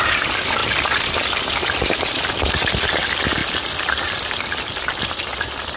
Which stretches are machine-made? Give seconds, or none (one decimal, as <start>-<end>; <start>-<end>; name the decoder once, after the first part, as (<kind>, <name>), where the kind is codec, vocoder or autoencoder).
none